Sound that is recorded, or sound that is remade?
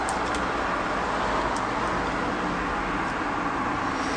recorded